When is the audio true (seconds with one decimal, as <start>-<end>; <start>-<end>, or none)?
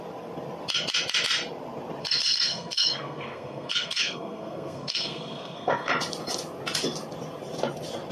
0.0-2.0; 5.9-8.1